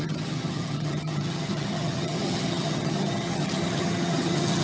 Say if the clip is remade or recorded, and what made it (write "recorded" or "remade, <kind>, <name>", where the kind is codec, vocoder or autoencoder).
remade, vocoder, HiFi-GAN